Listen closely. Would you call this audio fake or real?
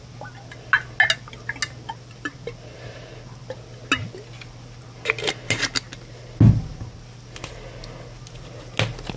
real